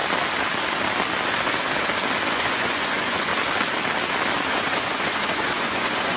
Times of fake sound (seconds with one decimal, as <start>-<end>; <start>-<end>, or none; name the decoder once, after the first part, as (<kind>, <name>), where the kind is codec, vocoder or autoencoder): 2.3-3.3 (vocoder, Vocos); 4.5-6.2